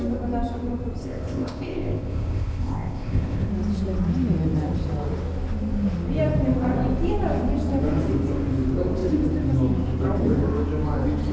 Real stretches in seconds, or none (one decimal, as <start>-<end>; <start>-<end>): 0.0-1.0; 3.5-11.3